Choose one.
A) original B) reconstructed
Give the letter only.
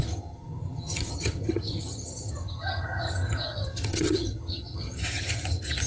B